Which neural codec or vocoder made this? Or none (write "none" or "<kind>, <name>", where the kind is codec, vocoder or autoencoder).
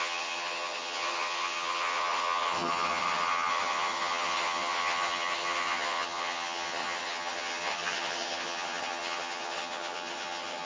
vocoder, HiFi-GAN